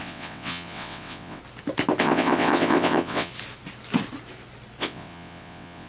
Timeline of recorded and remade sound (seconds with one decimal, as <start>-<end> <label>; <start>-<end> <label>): 0.0-1.4 remade; 1.4-2.0 recorded; 2.0-3.3 remade; 3.3-4.8 recorded; 4.8-5.9 remade